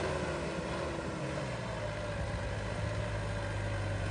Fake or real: real